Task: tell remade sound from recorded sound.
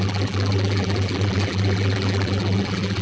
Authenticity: remade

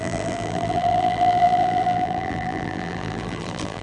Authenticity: remade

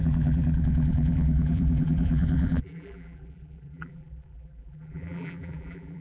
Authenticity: remade